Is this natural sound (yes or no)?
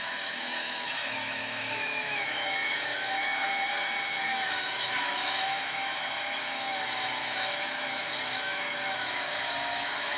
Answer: no